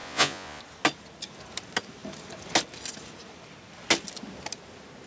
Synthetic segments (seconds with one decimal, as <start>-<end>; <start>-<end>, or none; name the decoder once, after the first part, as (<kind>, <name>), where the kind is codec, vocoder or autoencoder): 0.0-0.6 (vocoder, Vocos)